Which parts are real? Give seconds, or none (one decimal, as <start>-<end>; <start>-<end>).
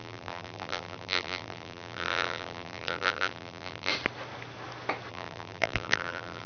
3.9-5.1